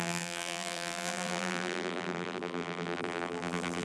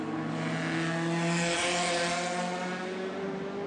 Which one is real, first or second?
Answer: second